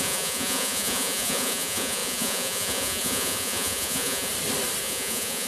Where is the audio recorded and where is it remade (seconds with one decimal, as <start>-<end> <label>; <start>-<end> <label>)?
0.0-4.3 remade; 4.3-4.8 recorded; 4.8-5.5 remade